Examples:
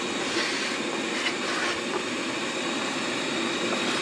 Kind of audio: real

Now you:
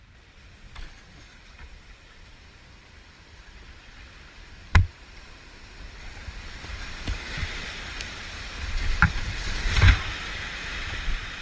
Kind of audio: fake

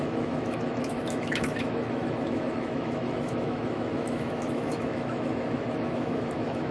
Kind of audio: fake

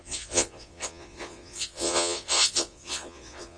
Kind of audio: fake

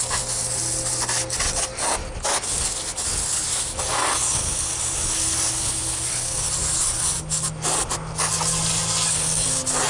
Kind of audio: real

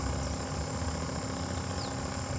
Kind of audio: real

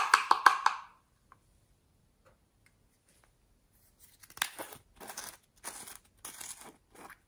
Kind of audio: real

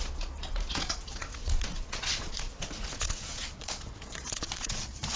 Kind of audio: fake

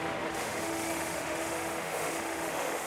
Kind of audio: fake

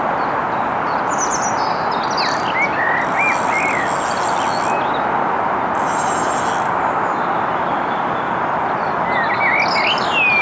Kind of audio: real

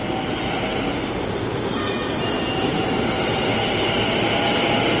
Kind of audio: real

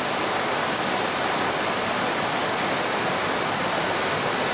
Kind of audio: real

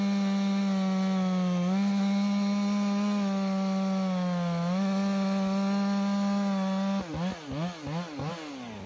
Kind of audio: real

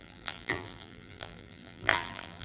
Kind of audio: fake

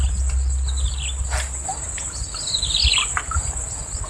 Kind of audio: real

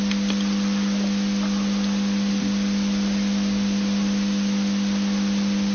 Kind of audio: real